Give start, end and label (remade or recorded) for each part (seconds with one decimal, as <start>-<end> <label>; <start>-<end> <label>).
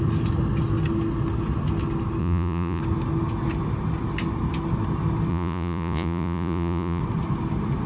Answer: 0.0-2.2 recorded; 2.2-2.8 remade; 2.8-5.3 recorded; 5.3-7.0 remade; 7.0-7.9 recorded